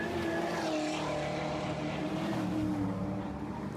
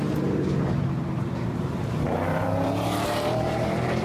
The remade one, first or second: second